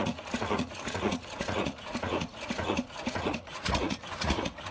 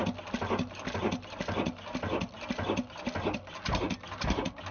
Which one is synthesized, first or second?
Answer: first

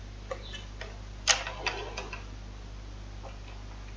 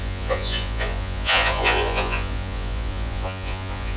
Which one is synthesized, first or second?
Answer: second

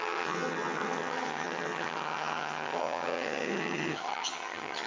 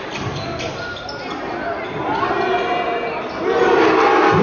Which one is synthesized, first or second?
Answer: first